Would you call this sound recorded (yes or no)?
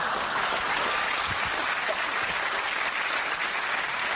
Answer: yes